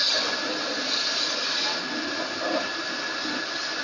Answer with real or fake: real